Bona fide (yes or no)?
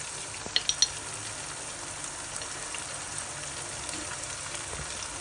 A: yes